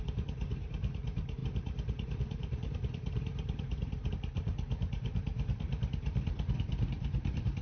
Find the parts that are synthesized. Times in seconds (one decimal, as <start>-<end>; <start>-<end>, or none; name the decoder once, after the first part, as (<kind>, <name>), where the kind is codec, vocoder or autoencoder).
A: 0.0-7.6 (vocoder, BigVGAN v2)